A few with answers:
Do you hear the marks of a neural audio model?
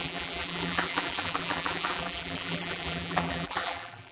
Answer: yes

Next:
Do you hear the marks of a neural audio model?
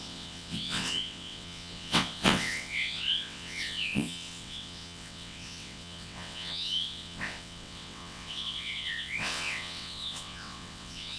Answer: yes